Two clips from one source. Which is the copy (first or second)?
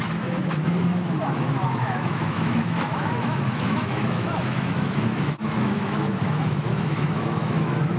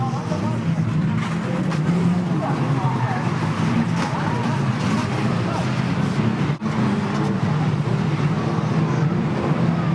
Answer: first